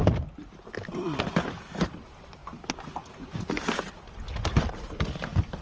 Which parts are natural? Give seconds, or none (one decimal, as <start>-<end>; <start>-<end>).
0.0-5.6